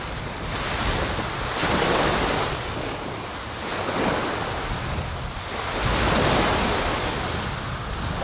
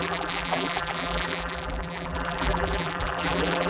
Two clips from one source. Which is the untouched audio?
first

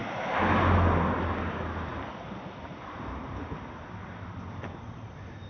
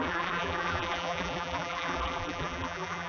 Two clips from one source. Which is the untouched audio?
first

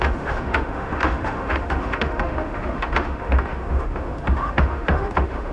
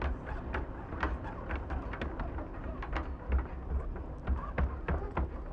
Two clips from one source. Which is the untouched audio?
second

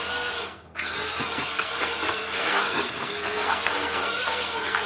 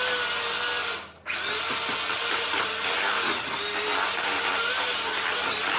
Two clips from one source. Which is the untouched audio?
second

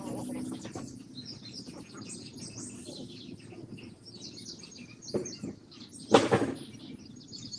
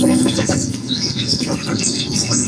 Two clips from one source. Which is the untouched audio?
first